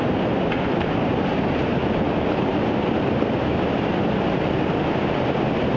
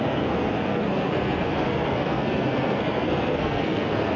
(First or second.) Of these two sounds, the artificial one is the second